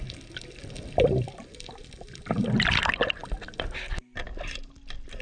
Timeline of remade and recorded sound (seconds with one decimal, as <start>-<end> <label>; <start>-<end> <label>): 0.0-5.2 recorded